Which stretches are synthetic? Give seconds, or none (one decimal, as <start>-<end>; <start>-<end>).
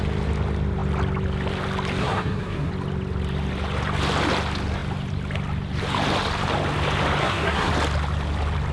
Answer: 2.0-2.7; 7.2-7.7